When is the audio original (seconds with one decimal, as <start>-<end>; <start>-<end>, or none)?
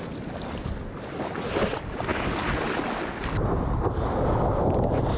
0.0-5.2